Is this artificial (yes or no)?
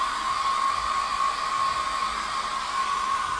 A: no